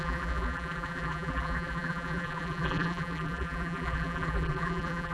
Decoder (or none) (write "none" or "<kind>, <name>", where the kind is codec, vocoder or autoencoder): vocoder, BigVGAN v2